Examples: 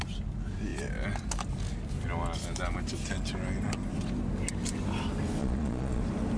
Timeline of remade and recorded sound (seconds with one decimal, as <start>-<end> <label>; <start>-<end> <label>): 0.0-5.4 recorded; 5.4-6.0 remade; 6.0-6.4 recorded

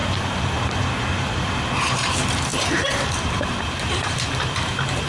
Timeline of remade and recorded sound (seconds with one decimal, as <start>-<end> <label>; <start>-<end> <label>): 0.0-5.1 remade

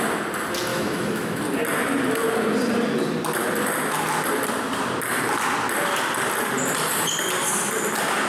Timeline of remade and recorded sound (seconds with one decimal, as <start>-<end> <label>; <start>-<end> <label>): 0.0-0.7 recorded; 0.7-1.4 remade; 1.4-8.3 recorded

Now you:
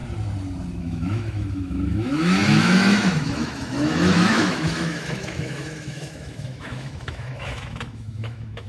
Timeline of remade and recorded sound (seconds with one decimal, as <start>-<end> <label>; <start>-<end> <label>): 0.0-0.8 recorded; 0.8-8.7 remade